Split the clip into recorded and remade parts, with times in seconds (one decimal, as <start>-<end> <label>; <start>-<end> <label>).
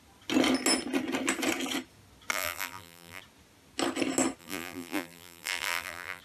0.0-2.3 recorded; 2.3-3.2 remade; 3.2-4.4 recorded; 4.4-6.2 remade